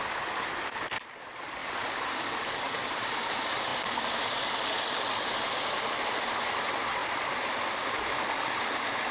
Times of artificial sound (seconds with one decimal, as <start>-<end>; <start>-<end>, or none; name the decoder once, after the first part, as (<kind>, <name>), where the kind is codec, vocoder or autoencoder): none